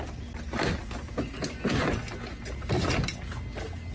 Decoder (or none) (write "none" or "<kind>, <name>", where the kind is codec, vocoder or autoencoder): none